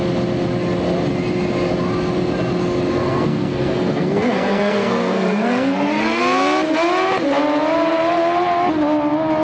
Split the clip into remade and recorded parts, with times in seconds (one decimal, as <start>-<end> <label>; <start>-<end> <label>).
0.0-3.0 recorded; 3.0-6.2 remade; 6.2-9.4 recorded